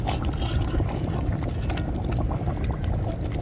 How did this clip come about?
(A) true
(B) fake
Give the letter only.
A